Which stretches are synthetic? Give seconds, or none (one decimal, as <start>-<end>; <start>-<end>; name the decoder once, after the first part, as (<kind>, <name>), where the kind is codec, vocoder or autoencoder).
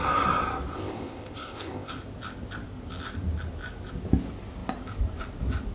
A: 0.7-1.9 (codec, ZipCodec)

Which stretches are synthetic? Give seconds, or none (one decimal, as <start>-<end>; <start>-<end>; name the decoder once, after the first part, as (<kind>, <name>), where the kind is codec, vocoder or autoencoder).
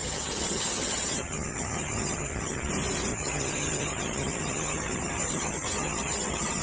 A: 0.0-2.7 (vocoder, HiFi-GAN); 3.1-6.6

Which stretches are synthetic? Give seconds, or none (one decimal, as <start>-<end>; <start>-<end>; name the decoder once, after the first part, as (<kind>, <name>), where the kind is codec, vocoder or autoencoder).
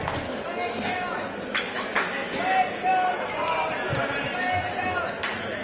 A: 2.9-3.9 (vocoder, BigVGAN v2)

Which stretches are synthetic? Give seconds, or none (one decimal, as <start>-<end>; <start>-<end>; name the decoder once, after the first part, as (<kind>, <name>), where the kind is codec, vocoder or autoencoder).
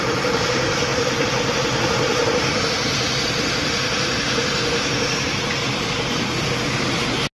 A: none